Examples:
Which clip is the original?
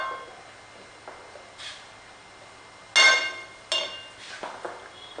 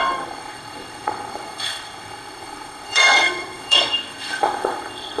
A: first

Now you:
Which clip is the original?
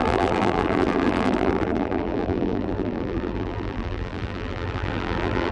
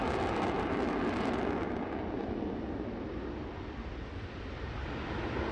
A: second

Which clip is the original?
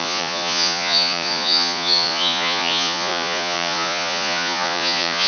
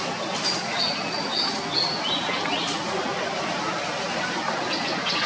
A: second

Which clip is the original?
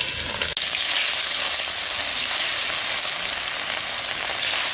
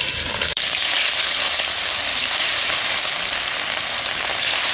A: first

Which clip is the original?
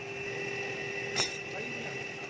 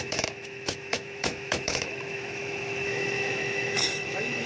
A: first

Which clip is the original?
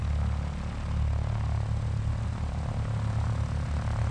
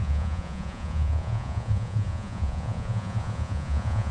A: first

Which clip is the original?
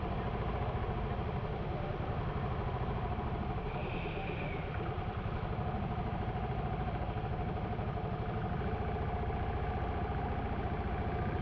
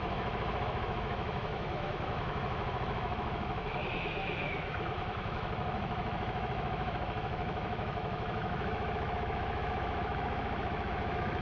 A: first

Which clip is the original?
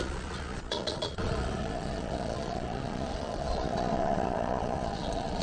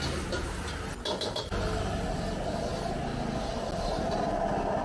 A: second